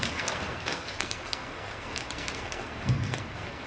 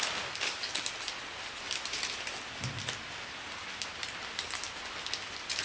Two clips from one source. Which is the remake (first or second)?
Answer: first